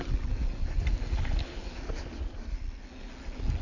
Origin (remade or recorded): recorded